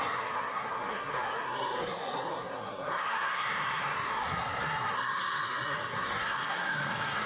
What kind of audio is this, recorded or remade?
remade